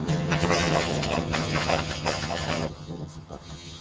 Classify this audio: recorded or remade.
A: remade